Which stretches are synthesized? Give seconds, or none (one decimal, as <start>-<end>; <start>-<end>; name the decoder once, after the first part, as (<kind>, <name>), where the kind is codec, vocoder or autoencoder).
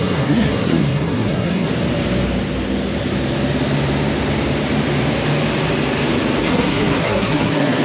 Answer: 0.0-1.7 (codec, SNAC); 6.4-7.8